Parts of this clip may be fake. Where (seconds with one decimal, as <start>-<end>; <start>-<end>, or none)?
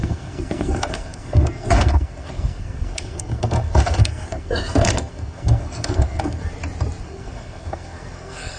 0.0-6.4; 7.0-8.6